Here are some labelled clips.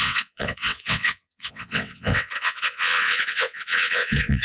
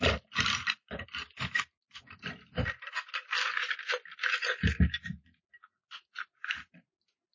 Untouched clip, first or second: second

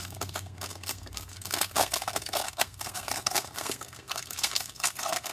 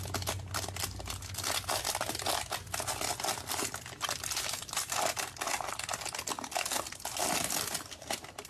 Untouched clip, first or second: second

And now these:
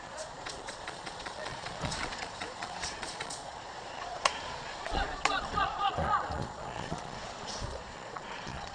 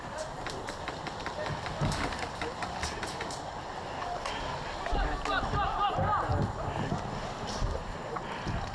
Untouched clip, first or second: second